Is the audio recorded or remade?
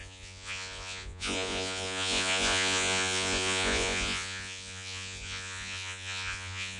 remade